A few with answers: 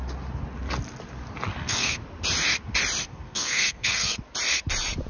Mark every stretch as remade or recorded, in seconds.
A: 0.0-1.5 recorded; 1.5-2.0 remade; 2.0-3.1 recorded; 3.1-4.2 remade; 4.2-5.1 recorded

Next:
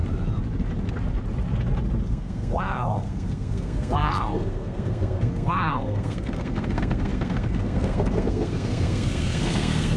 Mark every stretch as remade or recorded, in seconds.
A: 0.0-2.1 recorded; 2.1-10.0 remade

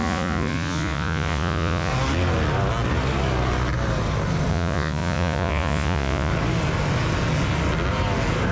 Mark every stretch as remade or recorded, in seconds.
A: 0.0-1.9 remade; 1.9-4.5 recorded; 4.5-6.3 remade; 6.3-8.5 recorded